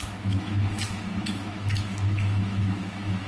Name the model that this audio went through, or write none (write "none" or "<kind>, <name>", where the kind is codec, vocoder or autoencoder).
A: autoencoder, DAC-VAE